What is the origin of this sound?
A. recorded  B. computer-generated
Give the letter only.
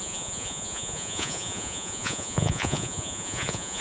B